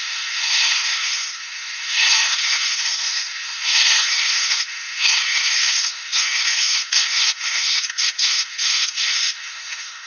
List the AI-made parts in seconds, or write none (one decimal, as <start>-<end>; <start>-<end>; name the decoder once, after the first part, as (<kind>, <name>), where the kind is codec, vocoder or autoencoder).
0.0-10.1 (codec, SNAC)